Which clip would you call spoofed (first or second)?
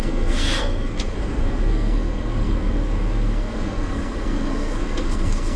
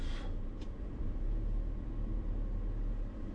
first